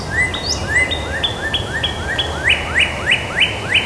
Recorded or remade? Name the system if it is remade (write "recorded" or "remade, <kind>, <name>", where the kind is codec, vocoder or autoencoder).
recorded